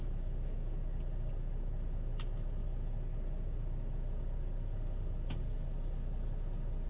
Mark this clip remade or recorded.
recorded